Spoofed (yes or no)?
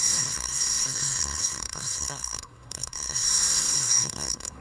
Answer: yes